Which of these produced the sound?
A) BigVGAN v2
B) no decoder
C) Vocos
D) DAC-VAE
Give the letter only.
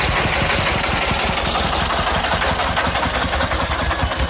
B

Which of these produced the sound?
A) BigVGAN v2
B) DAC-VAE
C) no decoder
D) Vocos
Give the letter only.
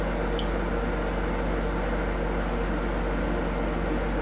C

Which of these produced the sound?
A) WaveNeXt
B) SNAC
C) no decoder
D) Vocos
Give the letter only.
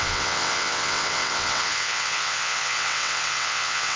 A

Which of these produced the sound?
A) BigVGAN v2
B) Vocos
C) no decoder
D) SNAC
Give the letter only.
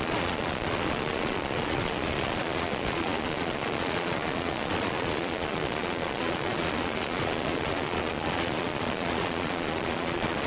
B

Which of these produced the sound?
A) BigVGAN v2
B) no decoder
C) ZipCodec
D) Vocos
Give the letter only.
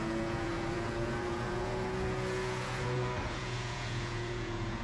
D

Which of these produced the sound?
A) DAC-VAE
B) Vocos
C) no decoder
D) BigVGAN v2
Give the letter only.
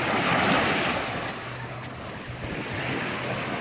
C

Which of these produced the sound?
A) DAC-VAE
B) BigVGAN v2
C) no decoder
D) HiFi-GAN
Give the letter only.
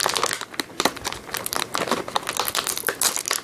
C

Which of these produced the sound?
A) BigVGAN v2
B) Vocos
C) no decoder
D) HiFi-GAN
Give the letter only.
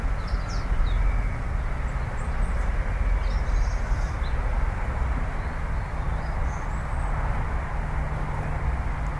C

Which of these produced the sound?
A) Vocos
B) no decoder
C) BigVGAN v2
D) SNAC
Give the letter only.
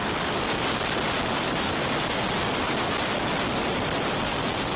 C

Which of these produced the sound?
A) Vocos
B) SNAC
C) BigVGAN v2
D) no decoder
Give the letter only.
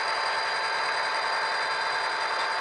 D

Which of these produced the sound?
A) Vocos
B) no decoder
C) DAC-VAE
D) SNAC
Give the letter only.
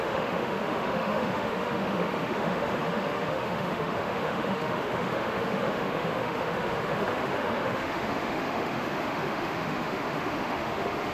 C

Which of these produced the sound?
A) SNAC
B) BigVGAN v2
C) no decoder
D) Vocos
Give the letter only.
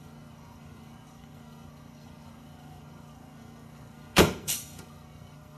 A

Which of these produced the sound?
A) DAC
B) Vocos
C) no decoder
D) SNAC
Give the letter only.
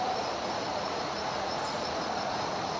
B